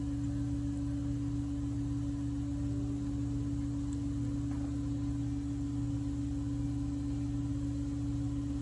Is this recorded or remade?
recorded